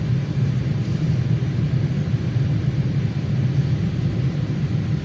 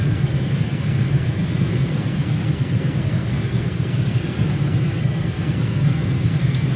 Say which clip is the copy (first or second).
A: second